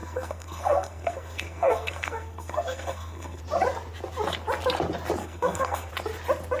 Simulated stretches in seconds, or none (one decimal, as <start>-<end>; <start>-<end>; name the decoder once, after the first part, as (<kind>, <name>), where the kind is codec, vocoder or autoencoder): 0.0-3.4 (codec, SNAC); 5.2-5.9